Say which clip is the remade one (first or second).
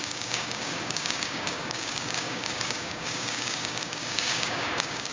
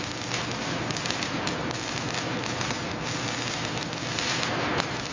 first